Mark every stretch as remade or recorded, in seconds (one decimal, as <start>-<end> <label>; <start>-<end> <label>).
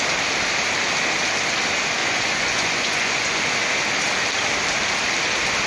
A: 0.0-2.0 recorded; 2.0-3.4 remade; 3.4-5.7 recorded